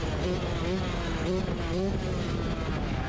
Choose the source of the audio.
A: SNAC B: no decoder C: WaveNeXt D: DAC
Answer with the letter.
B